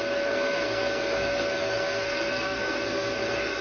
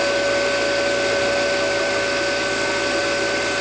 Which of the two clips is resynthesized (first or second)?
first